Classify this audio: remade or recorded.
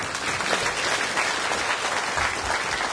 recorded